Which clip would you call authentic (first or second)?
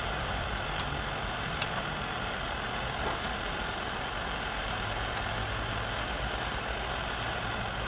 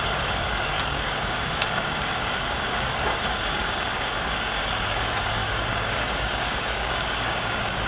first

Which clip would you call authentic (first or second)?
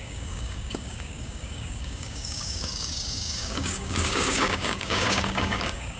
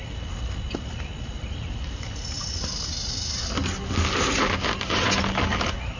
second